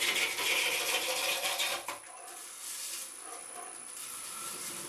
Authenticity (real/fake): real